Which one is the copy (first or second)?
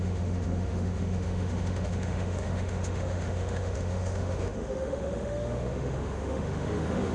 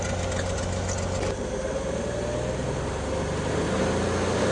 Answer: first